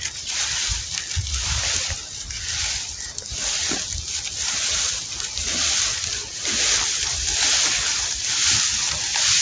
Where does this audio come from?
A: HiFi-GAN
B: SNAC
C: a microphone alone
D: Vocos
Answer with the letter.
C